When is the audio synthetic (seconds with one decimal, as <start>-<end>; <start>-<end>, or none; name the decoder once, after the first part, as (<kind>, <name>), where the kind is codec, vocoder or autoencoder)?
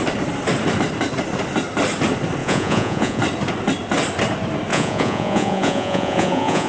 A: 2.4-3.2 (vocoder, Vocos); 4.7-6.7